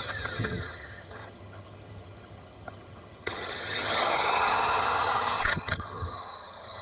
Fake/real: fake